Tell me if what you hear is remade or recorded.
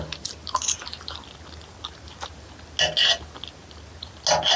recorded